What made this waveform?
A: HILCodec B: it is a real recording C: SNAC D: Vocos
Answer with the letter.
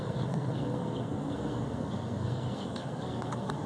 C